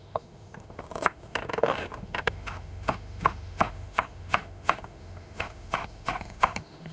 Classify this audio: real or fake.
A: fake